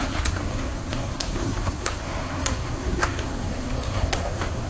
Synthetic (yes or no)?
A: yes